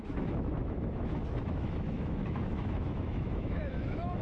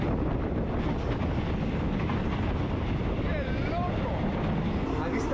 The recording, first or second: second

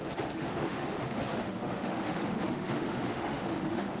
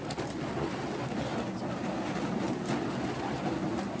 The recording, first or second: second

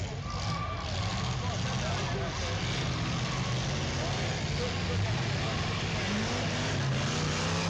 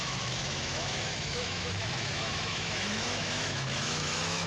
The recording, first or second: first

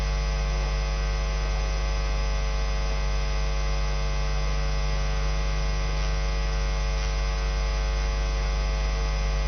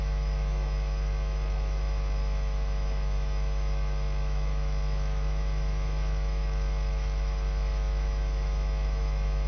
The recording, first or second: first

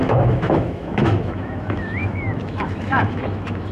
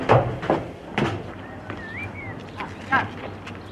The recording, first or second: second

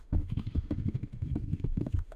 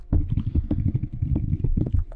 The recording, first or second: second